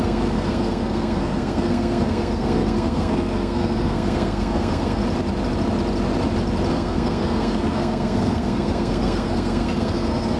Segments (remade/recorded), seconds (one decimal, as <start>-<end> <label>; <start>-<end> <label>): 0.0-5.0 remade; 5.0-6.7 recorded; 6.7-10.4 remade